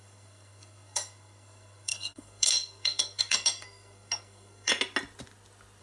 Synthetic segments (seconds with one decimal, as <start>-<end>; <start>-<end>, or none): 0.0-4.7